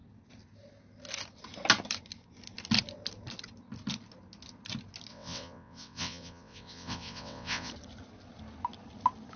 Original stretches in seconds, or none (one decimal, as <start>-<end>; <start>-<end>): 0.0-5.1; 7.7-9.4